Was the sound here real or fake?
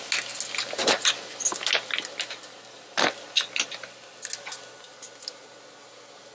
real